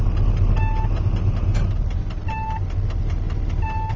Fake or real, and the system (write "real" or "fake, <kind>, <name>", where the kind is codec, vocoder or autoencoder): real